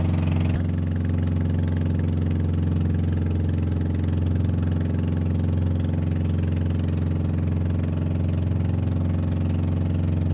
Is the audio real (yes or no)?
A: yes